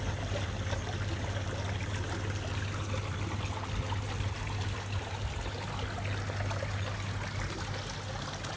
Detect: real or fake real